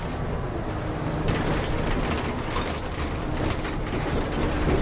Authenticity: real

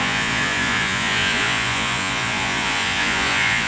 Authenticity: fake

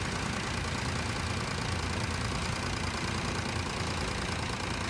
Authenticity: real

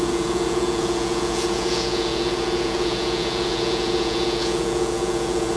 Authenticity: fake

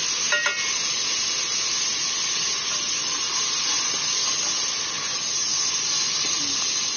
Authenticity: real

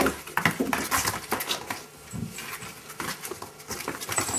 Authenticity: real